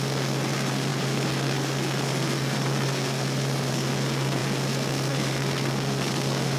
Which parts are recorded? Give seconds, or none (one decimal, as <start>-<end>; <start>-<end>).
none

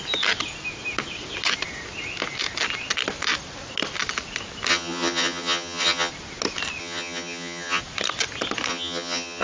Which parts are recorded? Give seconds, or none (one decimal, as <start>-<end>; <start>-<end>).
0.0-4.7; 6.1-6.8; 7.8-8.7